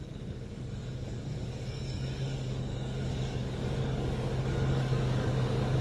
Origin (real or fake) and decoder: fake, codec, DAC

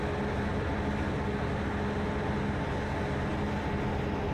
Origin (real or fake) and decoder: real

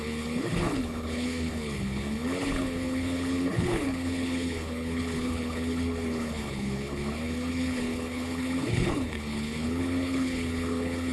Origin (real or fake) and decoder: fake, codec, HILCodec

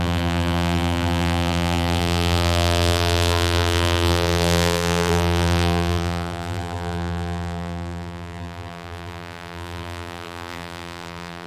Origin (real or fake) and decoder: fake, vocoder, BigVGAN v2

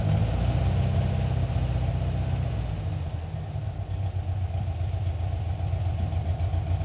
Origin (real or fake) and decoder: real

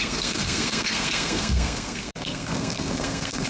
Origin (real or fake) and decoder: fake, codec, SNAC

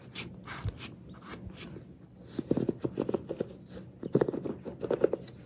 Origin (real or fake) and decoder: real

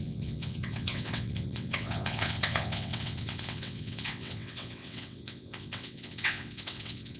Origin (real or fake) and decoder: fake, vocoder, WaveNeXt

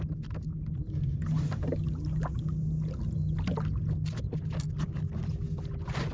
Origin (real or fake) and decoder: real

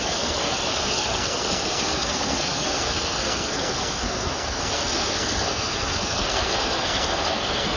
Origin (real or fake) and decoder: fake, codec, SNAC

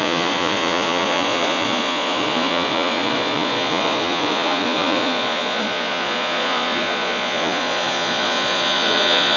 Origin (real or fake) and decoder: fake, vocoder, Vocos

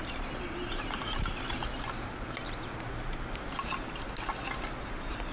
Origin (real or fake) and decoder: real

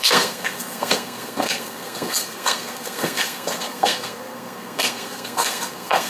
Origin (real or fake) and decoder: fake, codec, SNAC